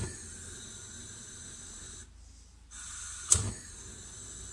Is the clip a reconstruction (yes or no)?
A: no